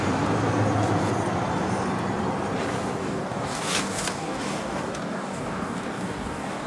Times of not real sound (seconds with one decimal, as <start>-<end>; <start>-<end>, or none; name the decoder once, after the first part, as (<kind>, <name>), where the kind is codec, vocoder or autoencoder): 3.0-6.7 (codec, DAC)